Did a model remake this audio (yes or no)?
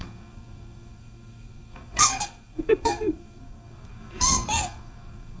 yes